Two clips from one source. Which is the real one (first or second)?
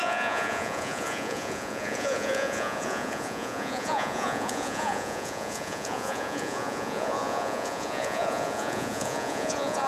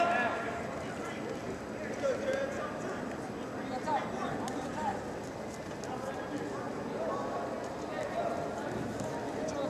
second